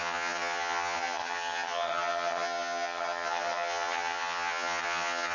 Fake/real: fake